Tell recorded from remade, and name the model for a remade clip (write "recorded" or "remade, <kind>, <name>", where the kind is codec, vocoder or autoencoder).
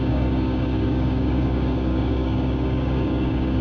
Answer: remade, codec, DAC